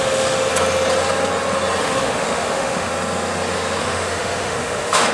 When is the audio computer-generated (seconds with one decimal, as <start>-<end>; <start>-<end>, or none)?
0.0-0.5; 1.8-2.9; 3.8-5.1